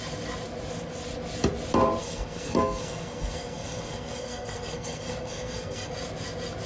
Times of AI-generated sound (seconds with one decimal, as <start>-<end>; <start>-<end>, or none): 2.0-5.9